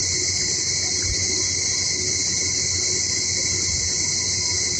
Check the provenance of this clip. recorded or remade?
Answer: recorded